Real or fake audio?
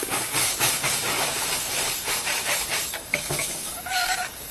fake